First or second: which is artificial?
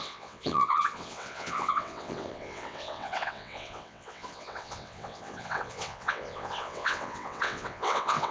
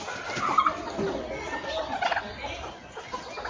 first